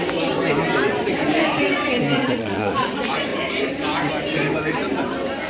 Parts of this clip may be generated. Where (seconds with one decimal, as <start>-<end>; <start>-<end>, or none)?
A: 2.2-2.9